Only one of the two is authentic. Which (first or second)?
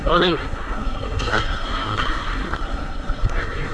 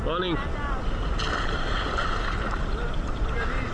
second